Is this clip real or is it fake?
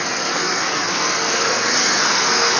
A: fake